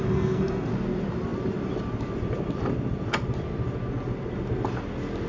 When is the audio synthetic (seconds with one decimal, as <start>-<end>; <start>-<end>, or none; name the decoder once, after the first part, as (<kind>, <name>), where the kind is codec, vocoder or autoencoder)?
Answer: 0.0-0.7 (codec, SNAC)